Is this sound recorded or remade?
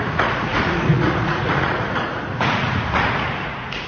remade